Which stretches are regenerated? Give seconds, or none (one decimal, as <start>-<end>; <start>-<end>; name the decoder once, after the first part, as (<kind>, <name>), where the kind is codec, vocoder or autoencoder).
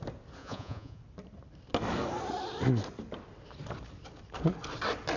0.4-1.0 (vocoder, Vocos)